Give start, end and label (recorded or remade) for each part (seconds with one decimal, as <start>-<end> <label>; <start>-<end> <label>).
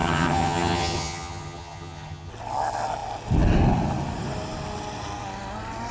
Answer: 0.0-2.3 remade; 2.3-5.9 recorded